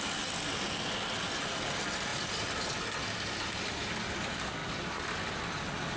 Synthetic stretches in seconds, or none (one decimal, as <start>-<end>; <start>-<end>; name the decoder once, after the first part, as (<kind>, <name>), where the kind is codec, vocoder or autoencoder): none